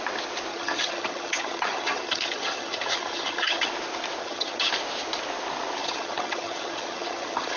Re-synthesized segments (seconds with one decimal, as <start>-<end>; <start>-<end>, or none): 0.5-3.7; 4.2-4.7; 5.8-7.6